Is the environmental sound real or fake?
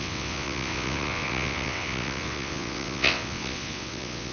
fake